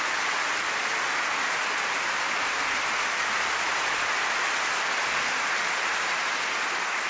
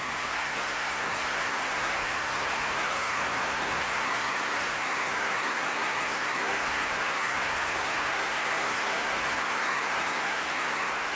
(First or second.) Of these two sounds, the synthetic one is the second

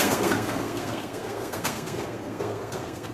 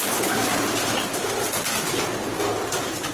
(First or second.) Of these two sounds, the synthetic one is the first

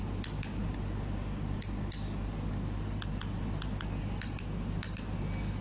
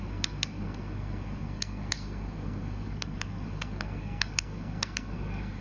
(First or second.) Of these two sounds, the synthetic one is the second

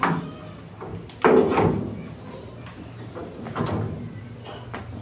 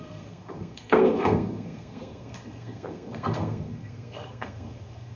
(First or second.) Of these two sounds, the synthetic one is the second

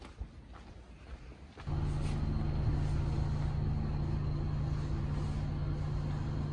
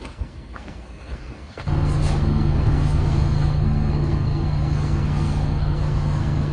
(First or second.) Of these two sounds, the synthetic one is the second